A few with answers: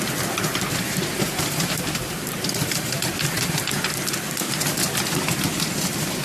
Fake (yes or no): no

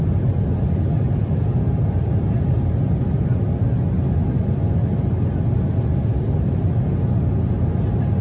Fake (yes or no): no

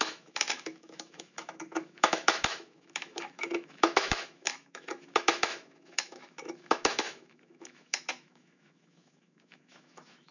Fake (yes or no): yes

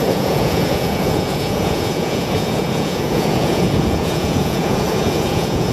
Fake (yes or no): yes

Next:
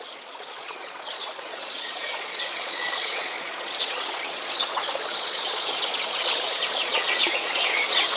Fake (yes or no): yes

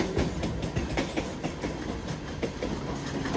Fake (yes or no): no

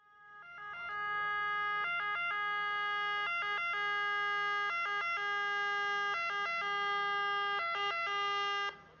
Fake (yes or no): no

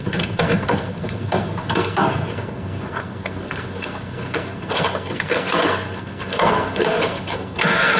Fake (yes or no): yes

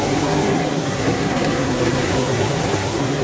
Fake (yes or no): yes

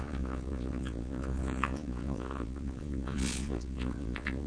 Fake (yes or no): yes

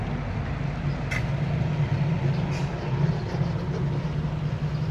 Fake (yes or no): no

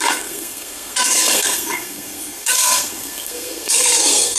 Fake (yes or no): yes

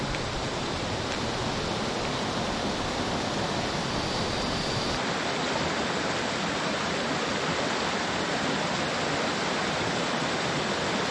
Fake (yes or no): no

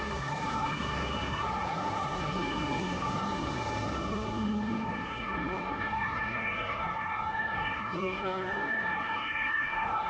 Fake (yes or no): yes